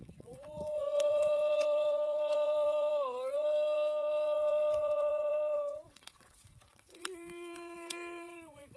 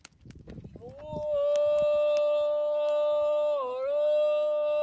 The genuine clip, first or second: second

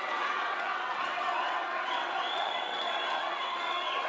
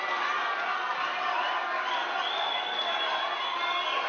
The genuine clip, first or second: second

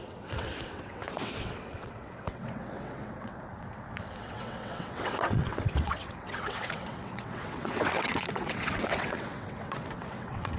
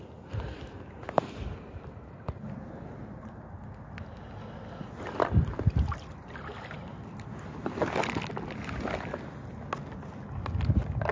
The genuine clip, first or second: second